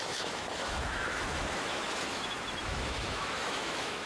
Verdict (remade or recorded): remade